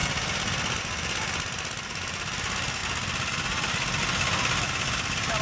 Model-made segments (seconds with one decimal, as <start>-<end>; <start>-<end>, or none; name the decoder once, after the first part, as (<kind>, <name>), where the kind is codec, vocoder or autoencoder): none